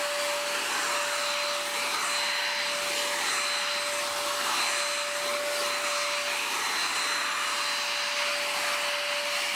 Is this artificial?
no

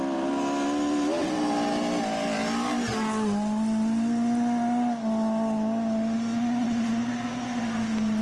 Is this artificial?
no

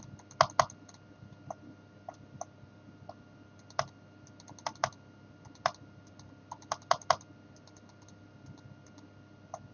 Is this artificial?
no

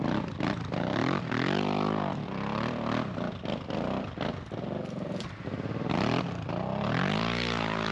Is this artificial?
yes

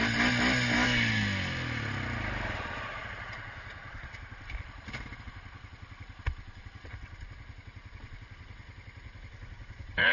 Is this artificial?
no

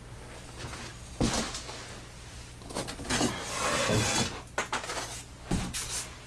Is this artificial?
no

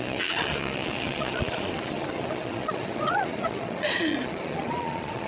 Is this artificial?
yes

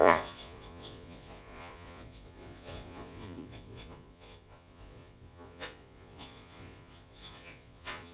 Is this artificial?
yes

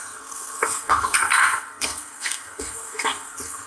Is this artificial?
yes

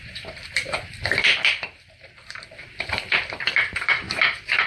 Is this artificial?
yes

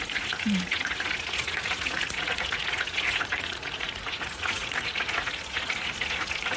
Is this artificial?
yes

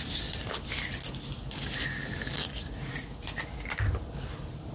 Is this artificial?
no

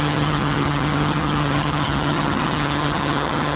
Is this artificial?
yes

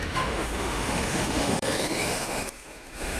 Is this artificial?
yes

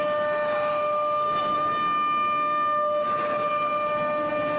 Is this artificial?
no